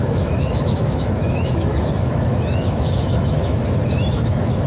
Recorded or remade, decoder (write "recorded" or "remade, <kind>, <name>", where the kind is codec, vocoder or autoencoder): remade, autoencoder, DAC-VAE